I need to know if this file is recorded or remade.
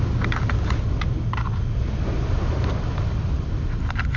recorded